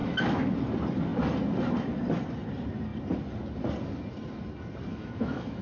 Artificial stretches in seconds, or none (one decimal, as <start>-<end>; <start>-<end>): 0.0-0.5; 4.9-5.6